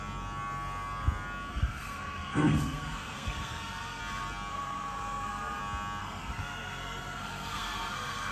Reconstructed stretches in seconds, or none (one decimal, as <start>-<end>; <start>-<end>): 1.5-4.0; 4.5-5.6; 6.0-8.3